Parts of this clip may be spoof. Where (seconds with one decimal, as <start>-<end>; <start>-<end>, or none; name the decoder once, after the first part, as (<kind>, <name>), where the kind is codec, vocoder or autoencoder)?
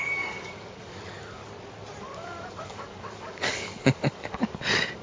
0.0-1.4 (codec, DAC); 2.0-5.0